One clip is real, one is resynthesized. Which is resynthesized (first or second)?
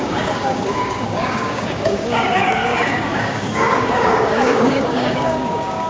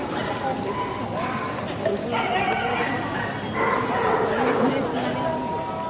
first